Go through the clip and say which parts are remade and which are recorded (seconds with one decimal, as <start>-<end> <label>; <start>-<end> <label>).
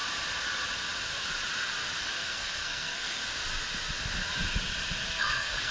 0.0-2.0 recorded; 2.0-3.2 remade; 3.2-5.1 recorded; 5.1-5.7 remade